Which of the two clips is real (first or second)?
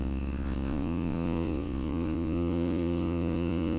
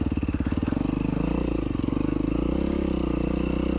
second